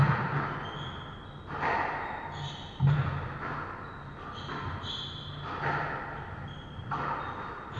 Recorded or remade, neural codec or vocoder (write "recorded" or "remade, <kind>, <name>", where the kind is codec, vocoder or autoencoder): recorded